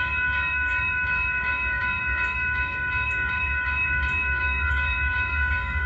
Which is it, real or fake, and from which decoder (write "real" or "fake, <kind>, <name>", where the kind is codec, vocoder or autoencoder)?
fake, codec, DAC